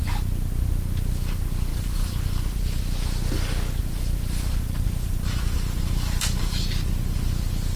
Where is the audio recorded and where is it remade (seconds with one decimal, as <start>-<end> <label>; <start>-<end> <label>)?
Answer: 0.0-1.7 recorded; 1.7-2.8 remade; 2.8-3.8 recorded; 3.8-6.5 remade; 6.5-7.8 recorded